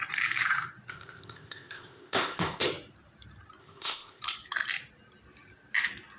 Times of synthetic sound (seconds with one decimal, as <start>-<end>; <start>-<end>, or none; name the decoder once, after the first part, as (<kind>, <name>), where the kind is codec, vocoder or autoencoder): 0.9-2.7 (codec, ZipCodec); 3.6-4.2